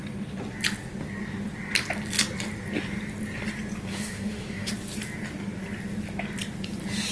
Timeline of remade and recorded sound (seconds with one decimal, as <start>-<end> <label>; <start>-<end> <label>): 0.0-3.9 recorded; 3.9-4.7 remade; 4.7-7.1 recorded